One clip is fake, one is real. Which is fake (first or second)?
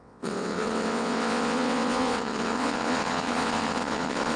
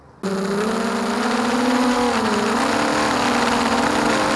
first